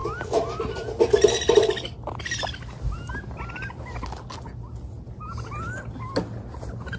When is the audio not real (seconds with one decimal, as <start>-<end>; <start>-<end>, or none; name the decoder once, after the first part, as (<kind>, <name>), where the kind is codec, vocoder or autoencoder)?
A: none